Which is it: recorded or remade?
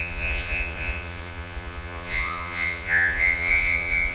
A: remade